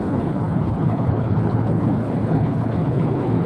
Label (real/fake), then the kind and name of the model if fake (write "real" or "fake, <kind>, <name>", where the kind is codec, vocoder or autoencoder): fake, codec, HILCodec